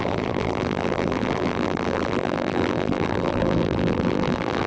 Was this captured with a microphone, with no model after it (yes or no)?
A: no